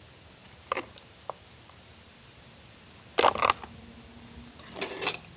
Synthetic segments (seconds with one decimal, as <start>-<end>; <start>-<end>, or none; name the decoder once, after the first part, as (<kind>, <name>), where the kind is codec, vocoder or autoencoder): 0.4-2.7 (vocoder, BigVGAN v2)